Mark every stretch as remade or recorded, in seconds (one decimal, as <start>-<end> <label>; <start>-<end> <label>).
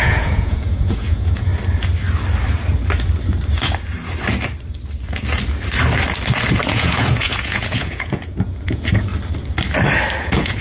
0.0-1.5 remade; 1.5-6.7 recorded; 6.7-9.1 remade; 9.1-10.2 recorded; 10.2-10.6 remade